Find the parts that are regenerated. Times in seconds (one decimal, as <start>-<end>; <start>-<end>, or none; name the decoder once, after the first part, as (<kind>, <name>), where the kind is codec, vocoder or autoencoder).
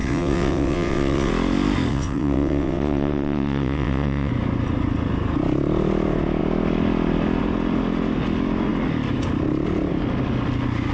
0.0-1.3 (vocoder, WaveNeXt); 1.9-4.3